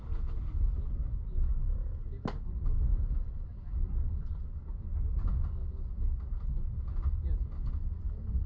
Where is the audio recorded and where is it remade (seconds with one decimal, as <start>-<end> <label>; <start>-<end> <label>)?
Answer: 0.0-8.5 recorded